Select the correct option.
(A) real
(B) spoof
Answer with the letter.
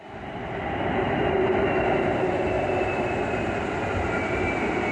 A